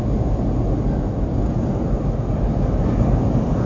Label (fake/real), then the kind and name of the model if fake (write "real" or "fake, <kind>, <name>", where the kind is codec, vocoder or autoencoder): real